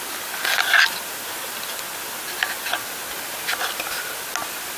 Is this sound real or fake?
real